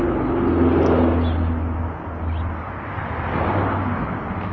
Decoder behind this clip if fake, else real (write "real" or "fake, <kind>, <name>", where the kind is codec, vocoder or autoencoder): real